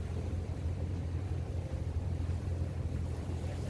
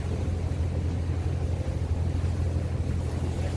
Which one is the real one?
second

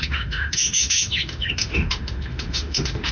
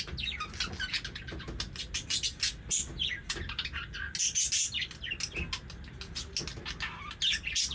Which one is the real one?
second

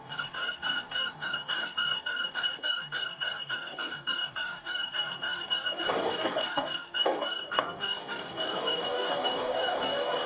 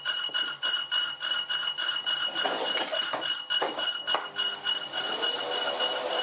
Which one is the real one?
second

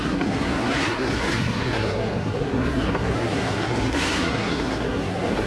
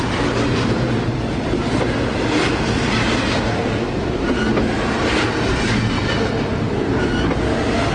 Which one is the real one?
second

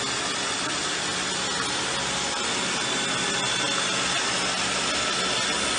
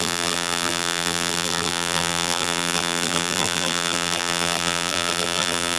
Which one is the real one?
first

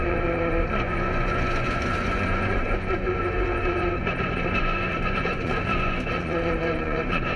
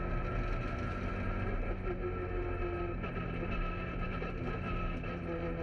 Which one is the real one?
second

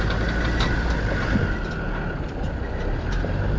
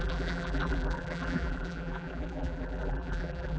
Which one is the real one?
first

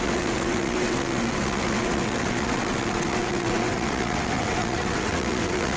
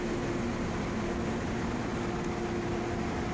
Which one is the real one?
second